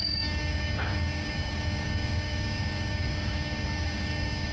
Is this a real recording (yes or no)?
no